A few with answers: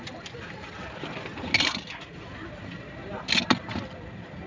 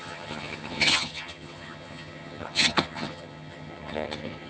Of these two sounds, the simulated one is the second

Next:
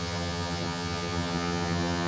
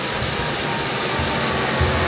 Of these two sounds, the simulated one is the first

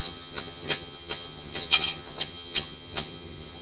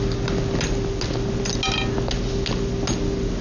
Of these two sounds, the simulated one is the first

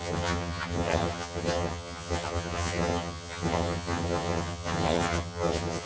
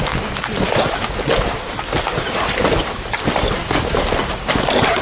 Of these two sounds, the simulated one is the first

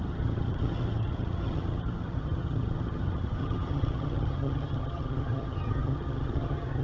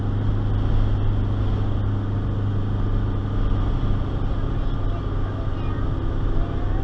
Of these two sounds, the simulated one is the first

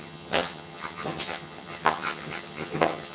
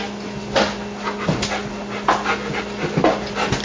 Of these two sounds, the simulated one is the first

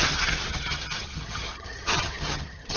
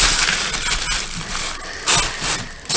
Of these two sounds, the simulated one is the first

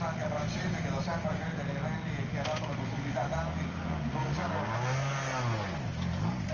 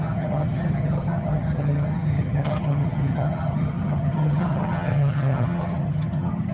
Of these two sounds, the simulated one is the second